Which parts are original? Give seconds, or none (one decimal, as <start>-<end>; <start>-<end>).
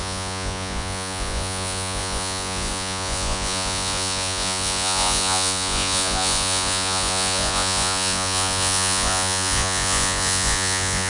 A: none